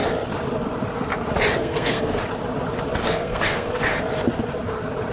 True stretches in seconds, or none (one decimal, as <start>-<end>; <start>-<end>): 0.0-1.6; 2.2-3.0; 3.7-5.1